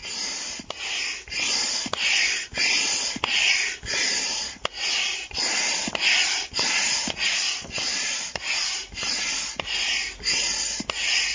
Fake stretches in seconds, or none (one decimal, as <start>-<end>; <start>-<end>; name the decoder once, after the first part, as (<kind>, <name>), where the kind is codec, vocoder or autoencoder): none